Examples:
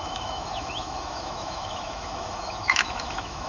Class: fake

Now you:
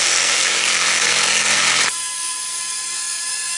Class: fake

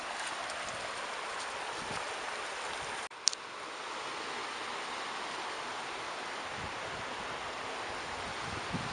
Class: real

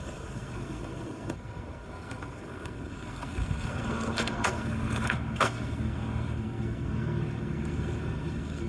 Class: fake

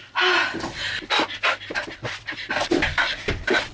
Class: real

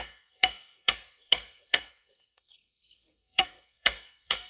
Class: fake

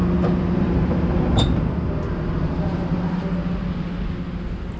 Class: real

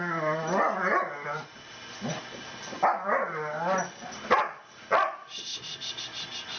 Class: real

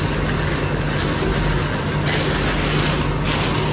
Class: real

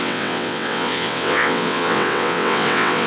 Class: fake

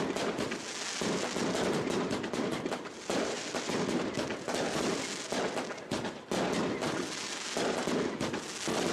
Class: real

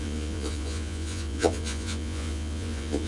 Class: fake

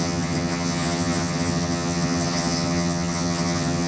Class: fake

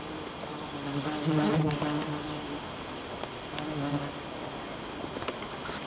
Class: real